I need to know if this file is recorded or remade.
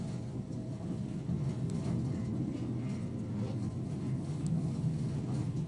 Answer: recorded